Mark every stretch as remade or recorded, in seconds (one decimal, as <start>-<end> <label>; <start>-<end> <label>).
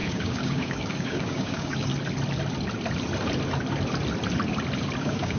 0.0-1.9 remade; 1.9-5.0 recorded; 5.0-5.4 remade